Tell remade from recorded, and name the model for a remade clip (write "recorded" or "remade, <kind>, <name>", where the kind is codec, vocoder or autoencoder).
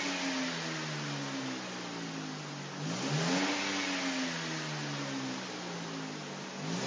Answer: recorded